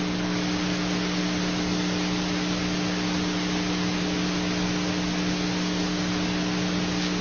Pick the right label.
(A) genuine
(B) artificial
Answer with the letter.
A